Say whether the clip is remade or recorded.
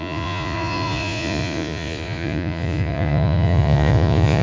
remade